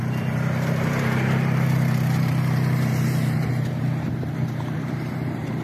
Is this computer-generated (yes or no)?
yes